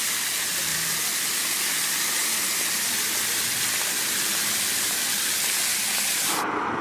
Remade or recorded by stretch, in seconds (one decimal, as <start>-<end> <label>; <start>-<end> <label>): 0.0-6.8 recorded